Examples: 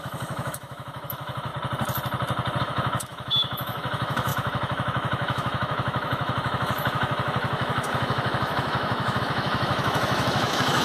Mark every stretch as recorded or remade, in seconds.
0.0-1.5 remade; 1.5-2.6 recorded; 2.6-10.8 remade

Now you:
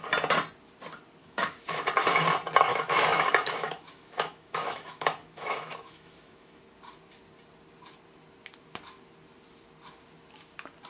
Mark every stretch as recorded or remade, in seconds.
0.0-1.2 recorded; 1.2-1.9 remade; 1.9-2.7 recorded; 2.7-6.6 remade; 6.6-10.9 recorded

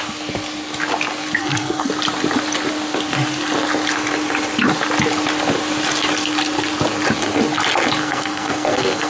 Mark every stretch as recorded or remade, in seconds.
0.0-1.4 recorded; 1.4-1.9 remade; 1.9-8.0 recorded; 8.0-9.1 remade

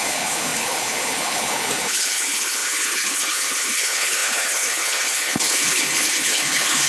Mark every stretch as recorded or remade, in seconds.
0.0-6.9 remade

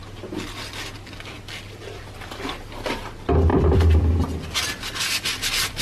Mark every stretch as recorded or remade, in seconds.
0.0-3.5 recorded; 3.5-4.0 remade; 4.0-5.8 recorded

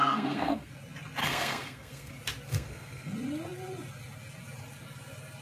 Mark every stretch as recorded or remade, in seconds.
0.0-0.7 remade; 0.7-1.2 recorded; 1.2-2.1 remade; 2.1-2.5 recorded; 2.5-3.1 remade; 3.1-5.4 recorded

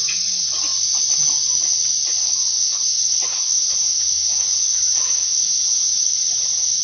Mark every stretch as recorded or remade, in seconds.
0.0-2.2 recorded; 2.2-6.3 remade; 6.3-6.8 recorded